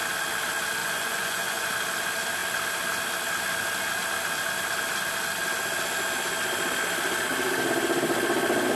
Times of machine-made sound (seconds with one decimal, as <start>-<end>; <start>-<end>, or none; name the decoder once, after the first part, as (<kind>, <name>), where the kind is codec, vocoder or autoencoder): 0.8-1.7 (vocoder, Vocos)